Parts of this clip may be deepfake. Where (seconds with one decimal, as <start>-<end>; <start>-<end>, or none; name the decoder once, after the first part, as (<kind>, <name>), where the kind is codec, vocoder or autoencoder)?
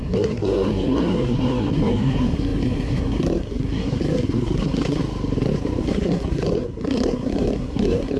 0.0-5.0 (codec, SNAC); 5.8-8.2